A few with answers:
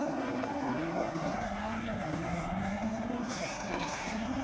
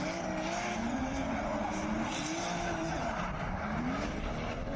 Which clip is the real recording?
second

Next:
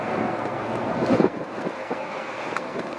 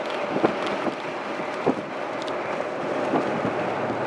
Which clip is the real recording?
second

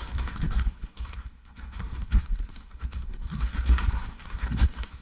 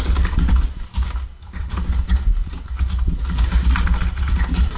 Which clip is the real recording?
second